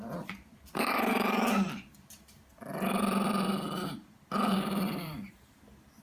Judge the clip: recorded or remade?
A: remade